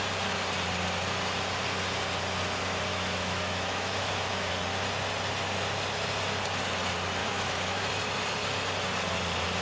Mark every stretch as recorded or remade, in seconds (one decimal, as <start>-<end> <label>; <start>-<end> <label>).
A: 0.0-2.9 recorded; 2.9-4.5 remade; 4.5-7.2 recorded; 7.2-7.9 remade; 7.9-9.6 recorded